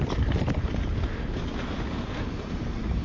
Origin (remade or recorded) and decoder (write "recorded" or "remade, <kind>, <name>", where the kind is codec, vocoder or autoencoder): recorded